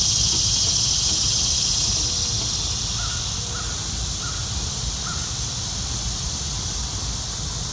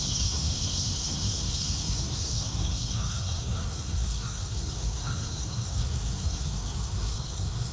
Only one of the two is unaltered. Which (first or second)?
first